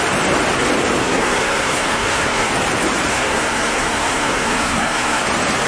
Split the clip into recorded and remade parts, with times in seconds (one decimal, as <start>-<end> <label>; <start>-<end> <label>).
0.0-1.0 recorded; 1.0-2.5 remade; 2.5-3.1 recorded; 3.1-5.2 remade; 5.2-5.7 recorded